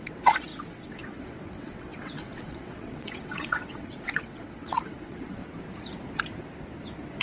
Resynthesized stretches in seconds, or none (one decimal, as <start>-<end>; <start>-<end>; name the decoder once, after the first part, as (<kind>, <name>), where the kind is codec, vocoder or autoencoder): 0.0-5.4 (vocoder, WaveNeXt)